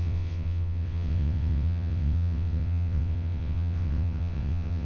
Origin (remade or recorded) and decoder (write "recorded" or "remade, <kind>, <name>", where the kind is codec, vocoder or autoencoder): remade, vocoder, WaveNeXt